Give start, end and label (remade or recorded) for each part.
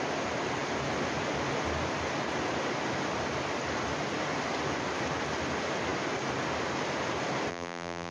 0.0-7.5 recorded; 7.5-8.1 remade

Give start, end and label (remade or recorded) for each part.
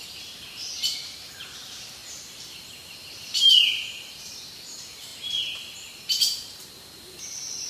0.0-7.7 remade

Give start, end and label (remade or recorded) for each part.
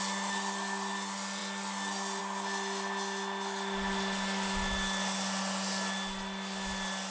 0.0-7.1 recorded